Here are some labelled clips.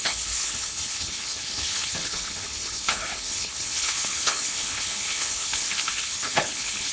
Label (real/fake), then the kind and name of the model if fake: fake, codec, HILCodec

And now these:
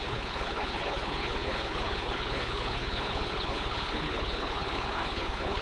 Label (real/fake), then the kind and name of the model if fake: fake, codec, HILCodec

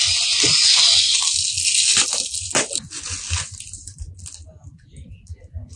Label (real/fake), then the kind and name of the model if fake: real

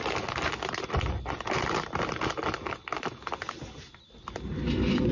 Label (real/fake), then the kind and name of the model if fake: real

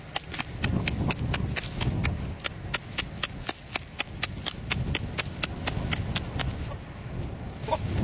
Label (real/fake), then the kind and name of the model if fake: real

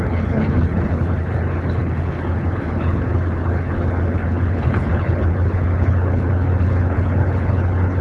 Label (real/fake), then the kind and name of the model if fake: fake, codec, HILCodec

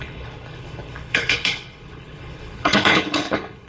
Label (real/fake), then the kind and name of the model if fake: fake, codec, HILCodec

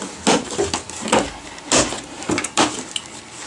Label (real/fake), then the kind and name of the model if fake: real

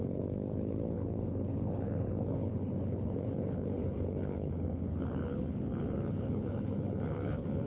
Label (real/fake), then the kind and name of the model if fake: fake, codec, HILCodec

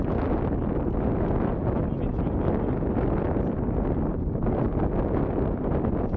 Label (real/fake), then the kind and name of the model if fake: real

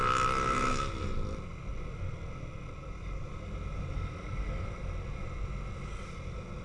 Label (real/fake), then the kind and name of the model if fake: real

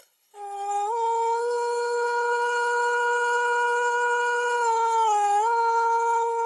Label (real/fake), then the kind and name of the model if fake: fake, codec, HILCodec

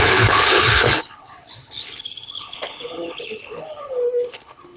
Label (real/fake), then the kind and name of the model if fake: fake, codec, HILCodec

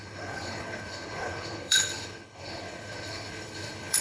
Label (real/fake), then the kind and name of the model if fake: fake, codec, HILCodec